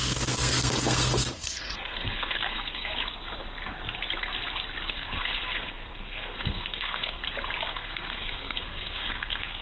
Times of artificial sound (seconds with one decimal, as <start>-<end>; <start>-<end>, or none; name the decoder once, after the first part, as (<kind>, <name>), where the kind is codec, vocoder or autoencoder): 0.0-2.9 (codec, SNAC); 4.9-7.2; 7.7-9.6